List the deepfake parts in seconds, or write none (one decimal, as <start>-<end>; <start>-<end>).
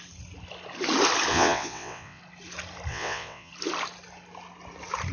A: 1.3-2.2; 2.9-3.5